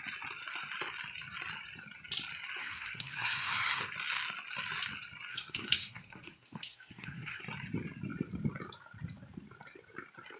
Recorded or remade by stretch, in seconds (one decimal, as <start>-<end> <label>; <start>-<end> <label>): 0.0-2.6 recorded; 2.6-3.8 remade; 3.8-5.3 recorded; 5.3-7.4 remade; 7.4-10.4 recorded